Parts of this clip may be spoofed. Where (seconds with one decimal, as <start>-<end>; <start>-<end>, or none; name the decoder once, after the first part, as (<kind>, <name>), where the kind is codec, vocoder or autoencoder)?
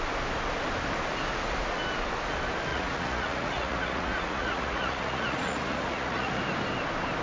2.7-6.4 (vocoder, Vocos)